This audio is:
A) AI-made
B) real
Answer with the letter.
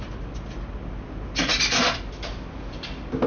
B